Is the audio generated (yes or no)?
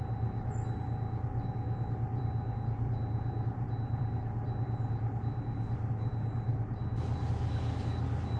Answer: no